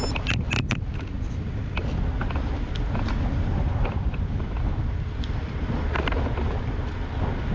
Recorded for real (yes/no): yes